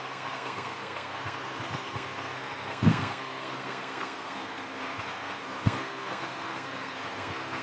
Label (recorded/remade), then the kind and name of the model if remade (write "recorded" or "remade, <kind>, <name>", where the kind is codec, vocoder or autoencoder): remade, codec, SNAC